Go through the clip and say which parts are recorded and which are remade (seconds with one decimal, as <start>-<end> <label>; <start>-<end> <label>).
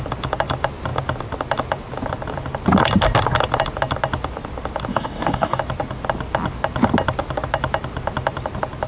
0.0-4.9 recorded; 4.9-5.6 remade; 5.6-8.9 recorded